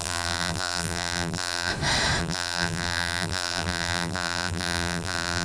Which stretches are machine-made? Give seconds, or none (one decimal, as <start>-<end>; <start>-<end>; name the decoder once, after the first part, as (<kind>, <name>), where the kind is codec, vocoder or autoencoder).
0.0-1.7 (vocoder, BigVGAN v2); 2.2-5.4